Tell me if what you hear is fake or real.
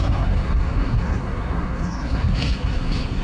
fake